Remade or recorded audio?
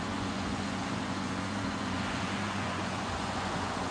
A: remade